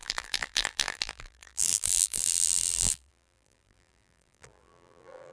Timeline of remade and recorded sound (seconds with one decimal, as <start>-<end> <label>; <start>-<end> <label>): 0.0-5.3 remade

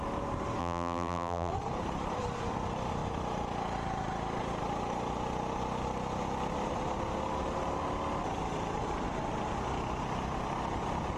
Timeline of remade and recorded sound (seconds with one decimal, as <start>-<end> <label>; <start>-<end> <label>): 0.0-0.6 recorded; 0.6-1.5 remade; 1.5-11.2 recorded

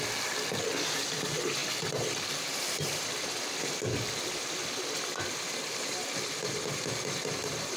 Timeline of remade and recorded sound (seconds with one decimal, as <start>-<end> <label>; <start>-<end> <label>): 0.0-7.8 recorded

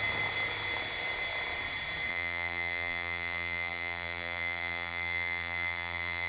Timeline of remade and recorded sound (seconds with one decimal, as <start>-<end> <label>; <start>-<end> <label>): 0.0-2.1 recorded; 2.1-6.3 remade

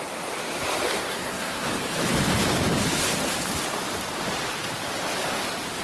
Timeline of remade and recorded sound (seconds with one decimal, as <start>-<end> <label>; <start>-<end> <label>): 0.0-1.1 recorded; 1.1-1.7 remade; 1.7-5.8 recorded

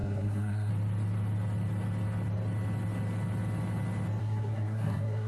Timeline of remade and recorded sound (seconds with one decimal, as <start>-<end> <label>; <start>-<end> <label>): 0.0-0.7 remade; 0.7-4.2 recorded; 4.2-5.3 remade

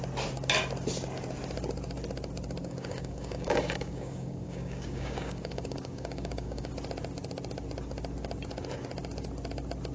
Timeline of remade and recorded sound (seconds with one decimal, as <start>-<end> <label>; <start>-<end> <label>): 0.0-2.6 recorded; 2.6-6.7 remade; 6.7-9.9 recorded

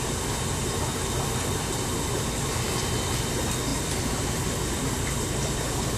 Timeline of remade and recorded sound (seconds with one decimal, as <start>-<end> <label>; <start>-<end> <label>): 0.0-3.7 recorded; 3.7-5.1 remade; 5.1-6.0 recorded